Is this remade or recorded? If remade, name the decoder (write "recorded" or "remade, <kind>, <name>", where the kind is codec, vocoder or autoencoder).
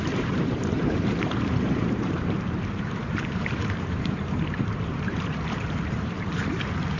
remade, vocoder, BigVGAN v2